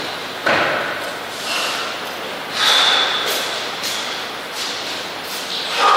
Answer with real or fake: real